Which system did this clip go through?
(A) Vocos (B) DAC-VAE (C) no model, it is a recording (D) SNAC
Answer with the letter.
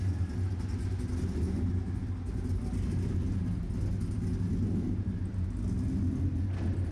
C